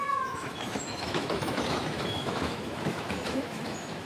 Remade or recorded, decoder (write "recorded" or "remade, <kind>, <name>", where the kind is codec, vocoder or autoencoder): remade, autoencoder, DAC-VAE